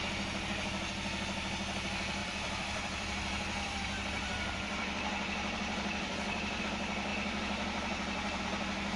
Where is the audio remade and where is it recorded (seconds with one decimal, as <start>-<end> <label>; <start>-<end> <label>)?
0.0-2.2 recorded; 2.2-6.6 remade; 6.6-9.0 recorded